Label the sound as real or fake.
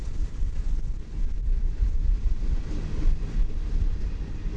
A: real